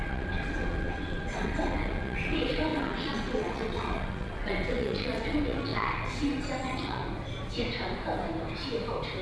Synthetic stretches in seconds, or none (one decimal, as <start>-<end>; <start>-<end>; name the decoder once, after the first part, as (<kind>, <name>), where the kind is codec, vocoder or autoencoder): 0.0-7.0 (vocoder, WaveNeXt)